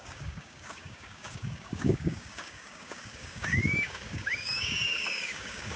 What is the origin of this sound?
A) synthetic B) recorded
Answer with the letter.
A